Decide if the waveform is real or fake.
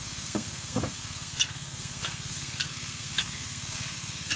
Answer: fake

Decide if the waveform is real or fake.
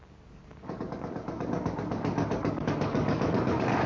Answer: fake